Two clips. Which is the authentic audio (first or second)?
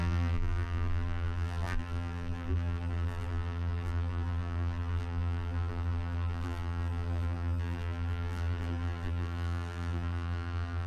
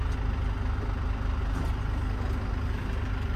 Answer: second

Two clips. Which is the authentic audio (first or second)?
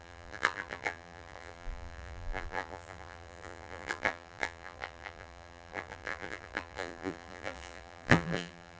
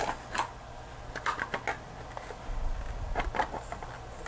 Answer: second